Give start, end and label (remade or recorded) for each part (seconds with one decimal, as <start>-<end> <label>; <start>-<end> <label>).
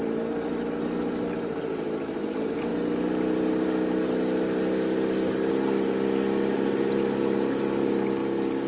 0.0-8.7 recorded